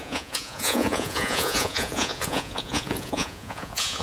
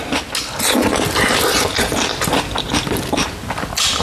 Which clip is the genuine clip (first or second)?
second